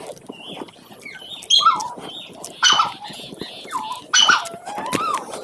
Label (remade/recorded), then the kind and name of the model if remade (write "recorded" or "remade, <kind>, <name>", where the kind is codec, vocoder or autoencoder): recorded